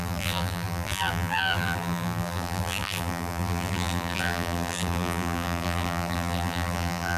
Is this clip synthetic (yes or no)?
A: yes